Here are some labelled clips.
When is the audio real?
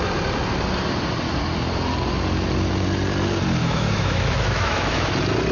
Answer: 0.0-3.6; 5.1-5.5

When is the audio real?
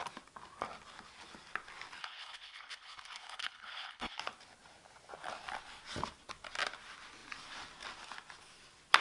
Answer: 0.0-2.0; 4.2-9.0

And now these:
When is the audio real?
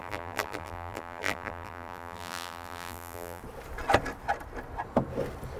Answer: 3.4-5.6